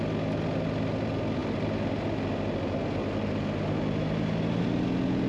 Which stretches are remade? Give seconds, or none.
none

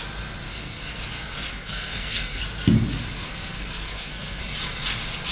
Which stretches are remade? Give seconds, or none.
0.5-2.4; 3.2-4.4